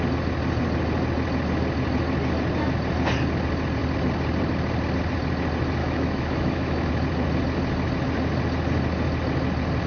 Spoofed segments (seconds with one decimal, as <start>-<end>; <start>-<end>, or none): 5.8-6.9